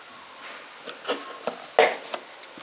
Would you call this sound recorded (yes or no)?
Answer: yes